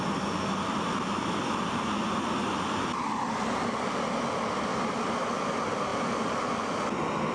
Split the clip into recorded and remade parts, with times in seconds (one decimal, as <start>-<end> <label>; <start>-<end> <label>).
0.0-2.0 recorded; 2.0-2.9 remade; 2.9-4.7 recorded; 4.7-5.5 remade; 5.5-5.9 recorded; 5.9-6.4 remade; 6.4-7.3 recorded